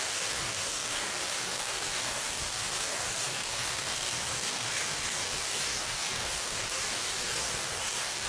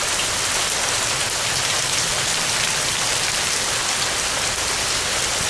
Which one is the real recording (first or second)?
second